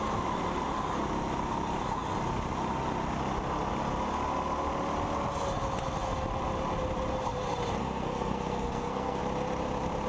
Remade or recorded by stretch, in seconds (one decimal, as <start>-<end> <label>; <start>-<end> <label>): 0.0-7.8 recorded; 7.8-9.2 remade; 9.2-10.1 recorded